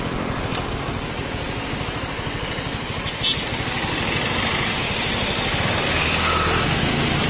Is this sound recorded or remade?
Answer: recorded